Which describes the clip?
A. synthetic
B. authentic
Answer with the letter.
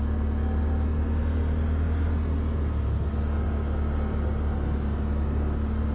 B